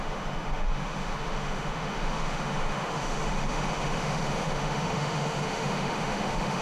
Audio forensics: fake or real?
fake